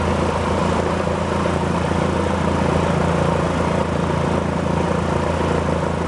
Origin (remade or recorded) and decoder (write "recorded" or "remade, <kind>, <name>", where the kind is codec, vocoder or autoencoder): recorded